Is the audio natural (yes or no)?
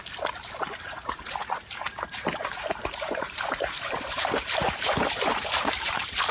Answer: no